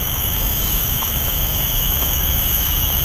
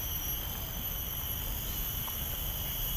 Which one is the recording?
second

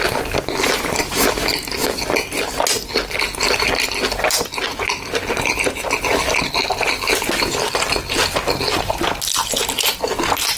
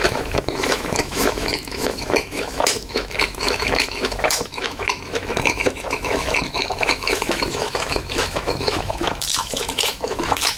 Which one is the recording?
first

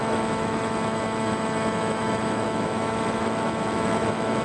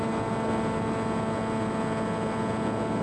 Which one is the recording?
second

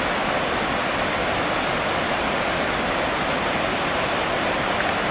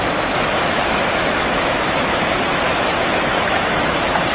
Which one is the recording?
first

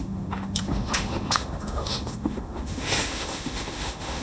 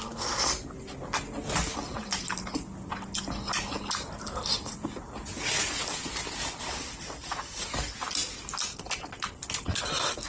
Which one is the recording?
second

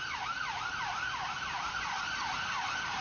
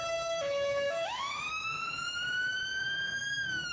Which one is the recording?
first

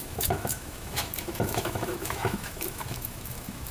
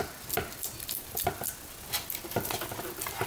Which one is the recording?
second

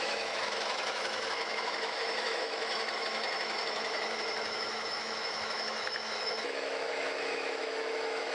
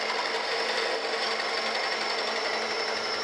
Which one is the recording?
second